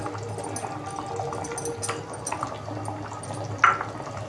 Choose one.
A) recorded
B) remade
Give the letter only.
A